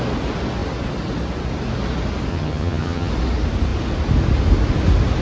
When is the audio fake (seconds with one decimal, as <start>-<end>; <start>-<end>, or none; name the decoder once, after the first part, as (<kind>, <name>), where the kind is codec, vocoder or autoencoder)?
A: 2.3-3.1 (vocoder, HiFi-GAN)